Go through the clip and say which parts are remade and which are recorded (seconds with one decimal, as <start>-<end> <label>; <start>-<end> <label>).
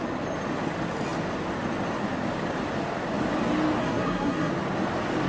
0.0-3.8 recorded; 3.8-4.5 remade; 4.5-5.3 recorded